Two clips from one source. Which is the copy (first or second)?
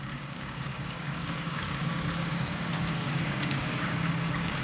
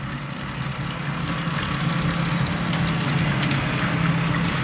first